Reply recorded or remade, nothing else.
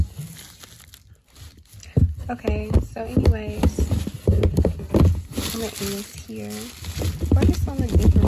recorded